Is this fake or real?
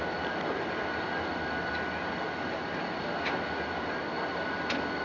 real